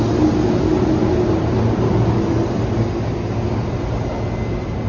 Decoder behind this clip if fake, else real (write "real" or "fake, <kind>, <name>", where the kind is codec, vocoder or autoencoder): real